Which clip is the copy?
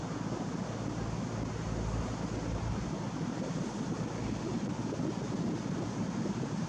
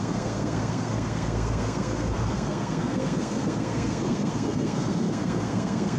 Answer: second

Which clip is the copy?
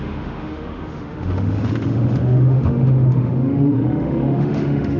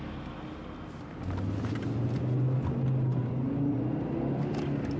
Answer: first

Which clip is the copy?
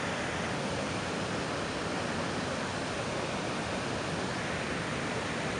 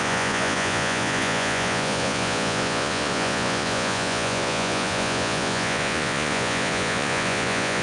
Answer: second